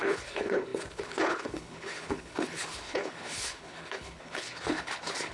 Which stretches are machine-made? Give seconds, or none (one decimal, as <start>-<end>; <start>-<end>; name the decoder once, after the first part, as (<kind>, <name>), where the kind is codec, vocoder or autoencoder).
0.0-5.3 (codec, HILCodec)